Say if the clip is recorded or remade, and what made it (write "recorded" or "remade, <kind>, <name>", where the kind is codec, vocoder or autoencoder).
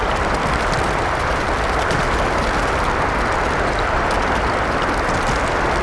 recorded